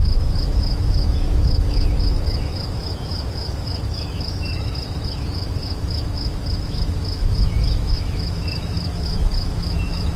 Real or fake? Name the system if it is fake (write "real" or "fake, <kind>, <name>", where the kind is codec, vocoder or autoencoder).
fake, autoencoder, DAC-VAE